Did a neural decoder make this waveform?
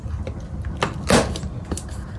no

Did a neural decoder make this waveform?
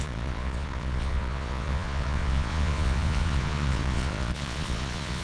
yes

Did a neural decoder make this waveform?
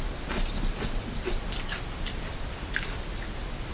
no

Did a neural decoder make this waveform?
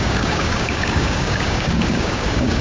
yes